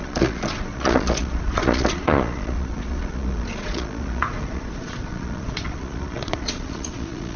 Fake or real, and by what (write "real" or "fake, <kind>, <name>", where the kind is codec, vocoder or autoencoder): fake, vocoder, Vocos